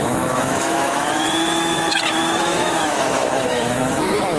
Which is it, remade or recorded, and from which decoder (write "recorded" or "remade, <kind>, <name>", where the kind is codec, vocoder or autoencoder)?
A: remade, autoencoder, DAC-VAE